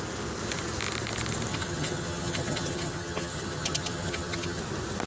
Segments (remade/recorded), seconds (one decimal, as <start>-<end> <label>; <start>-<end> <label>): 0.0-1.5 recorded; 1.5-4.6 remade; 4.6-5.1 recorded

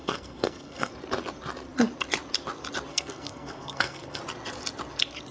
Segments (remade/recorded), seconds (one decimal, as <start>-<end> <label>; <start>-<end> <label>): 0.0-0.9 remade; 0.9-2.9 recorded; 2.9-4.2 remade; 4.2-5.3 recorded